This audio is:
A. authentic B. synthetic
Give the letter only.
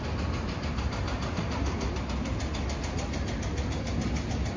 A